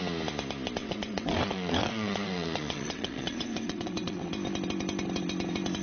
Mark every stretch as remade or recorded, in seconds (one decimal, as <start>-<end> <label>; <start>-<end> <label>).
0.0-0.8 recorded; 0.8-4.3 remade; 4.3-5.8 recorded